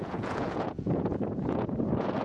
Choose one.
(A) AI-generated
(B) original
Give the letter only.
A